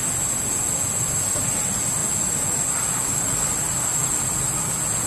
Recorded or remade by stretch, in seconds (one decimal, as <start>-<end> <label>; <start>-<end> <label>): 0.0-5.1 recorded